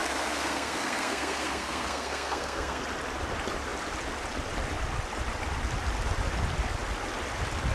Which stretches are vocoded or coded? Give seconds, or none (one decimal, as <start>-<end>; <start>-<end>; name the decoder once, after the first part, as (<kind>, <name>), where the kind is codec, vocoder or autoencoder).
0.0-2.8 (codec, SNAC)